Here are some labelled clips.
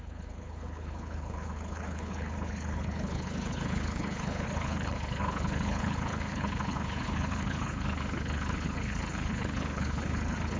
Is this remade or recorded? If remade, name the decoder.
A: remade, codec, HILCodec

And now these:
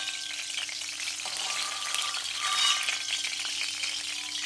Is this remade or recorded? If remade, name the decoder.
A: recorded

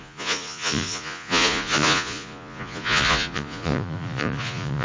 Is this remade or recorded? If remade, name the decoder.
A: remade, vocoder, Vocos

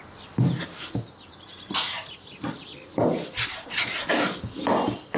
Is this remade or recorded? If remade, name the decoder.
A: recorded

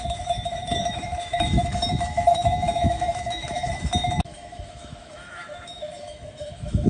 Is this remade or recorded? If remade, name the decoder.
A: remade, autoencoder, DAC-VAE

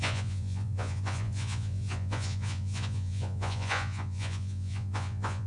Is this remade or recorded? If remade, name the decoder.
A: remade, vocoder, Vocos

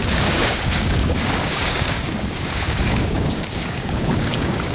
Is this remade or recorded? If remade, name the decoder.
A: remade, codec, DAC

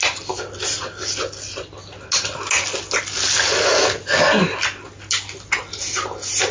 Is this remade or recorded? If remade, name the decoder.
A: recorded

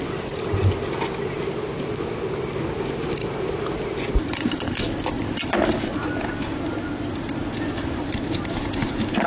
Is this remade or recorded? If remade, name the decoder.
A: recorded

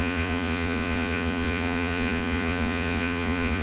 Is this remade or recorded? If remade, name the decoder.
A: remade, vocoder, Vocos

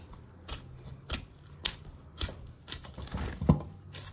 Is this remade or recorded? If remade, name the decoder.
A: recorded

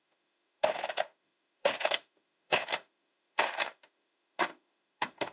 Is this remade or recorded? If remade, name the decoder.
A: remade, autoencoder, DAC-VAE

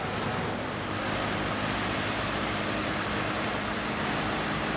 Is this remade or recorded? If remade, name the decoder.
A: recorded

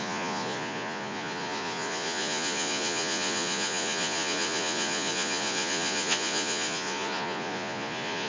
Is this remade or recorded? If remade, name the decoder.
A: remade, vocoder, Vocos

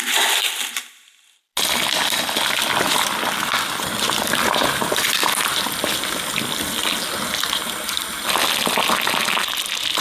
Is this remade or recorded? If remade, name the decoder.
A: recorded